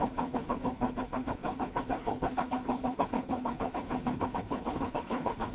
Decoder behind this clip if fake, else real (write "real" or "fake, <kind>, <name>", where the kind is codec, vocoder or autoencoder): fake, codec, HILCodec